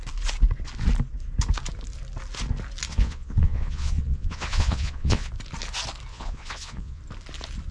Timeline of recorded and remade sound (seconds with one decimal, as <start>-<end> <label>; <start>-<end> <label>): 0.0-2.9 recorded; 2.9-5.3 remade; 5.3-6.1 recorded; 6.1-7.0 remade; 7.0-7.7 recorded